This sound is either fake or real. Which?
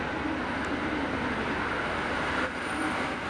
real